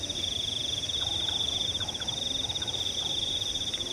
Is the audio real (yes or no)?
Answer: no